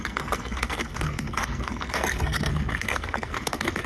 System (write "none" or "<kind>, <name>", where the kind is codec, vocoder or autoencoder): codec, SNAC